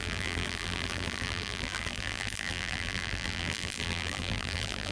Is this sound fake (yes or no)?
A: yes